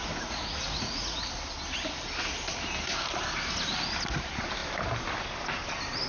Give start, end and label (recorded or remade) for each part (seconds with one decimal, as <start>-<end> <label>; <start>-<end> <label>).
0.0-1.3 remade; 1.3-6.1 recorded